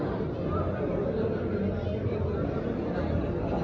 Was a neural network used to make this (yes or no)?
no